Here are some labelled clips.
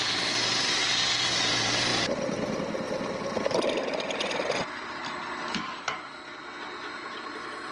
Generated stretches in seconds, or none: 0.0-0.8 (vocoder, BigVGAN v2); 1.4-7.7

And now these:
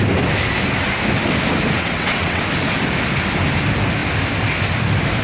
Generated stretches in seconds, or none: 1.8-2.4 (vocoder, WaveNeXt)

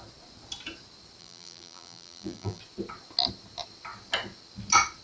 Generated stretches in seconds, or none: 1.2-2.6 (vocoder, BigVGAN v2)

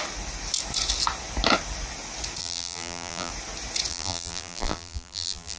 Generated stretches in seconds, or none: 2.4-3.3 (vocoder, BigVGAN v2); 3.9-5.6

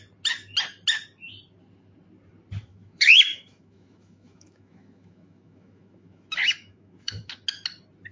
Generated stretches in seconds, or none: 2.7-7.3 (autoencoder, DAC-VAE)

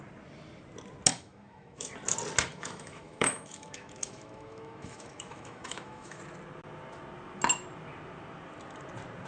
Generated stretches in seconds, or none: 1.1-1.9 (autoencoder, DAC-VAE); 2.5-6.2